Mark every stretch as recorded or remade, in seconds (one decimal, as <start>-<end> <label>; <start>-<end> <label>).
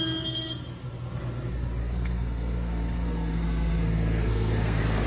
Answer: 0.0-1.8 recorded; 1.8-5.1 remade